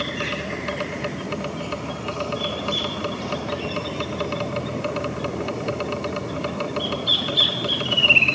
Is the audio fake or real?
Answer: fake